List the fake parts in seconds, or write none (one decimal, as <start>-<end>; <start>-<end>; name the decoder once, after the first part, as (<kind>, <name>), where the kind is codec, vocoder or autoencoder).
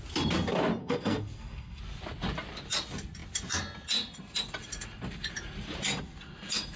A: 0.8-1.8 (codec, SNAC)